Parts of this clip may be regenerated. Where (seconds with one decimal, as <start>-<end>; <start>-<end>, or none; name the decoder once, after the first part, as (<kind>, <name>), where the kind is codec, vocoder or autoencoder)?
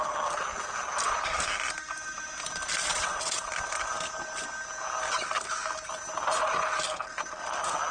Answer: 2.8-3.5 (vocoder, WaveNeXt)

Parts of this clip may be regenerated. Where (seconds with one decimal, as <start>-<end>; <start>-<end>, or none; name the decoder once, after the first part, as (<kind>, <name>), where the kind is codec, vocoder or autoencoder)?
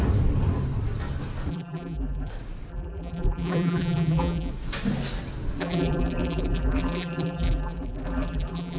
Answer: 1.5-2.3 (vocoder, BigVGAN v2); 2.7-4.5; 5.6-8.8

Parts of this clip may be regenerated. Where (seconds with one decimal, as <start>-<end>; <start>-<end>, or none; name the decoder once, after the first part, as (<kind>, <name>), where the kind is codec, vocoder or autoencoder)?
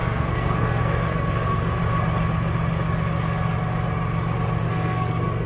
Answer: 0.0-1.8 (codec, SNAC); 4.6-5.5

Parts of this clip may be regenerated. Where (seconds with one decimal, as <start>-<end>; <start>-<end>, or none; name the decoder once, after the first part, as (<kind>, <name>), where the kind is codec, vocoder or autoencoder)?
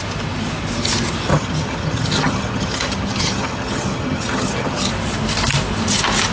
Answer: 1.3-4.9 (vocoder, HiFi-GAN)